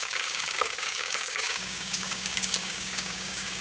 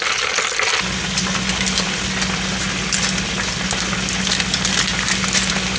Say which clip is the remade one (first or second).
first